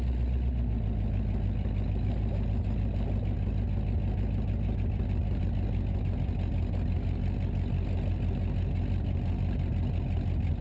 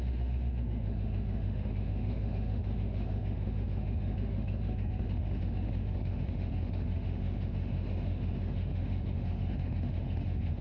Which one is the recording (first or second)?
first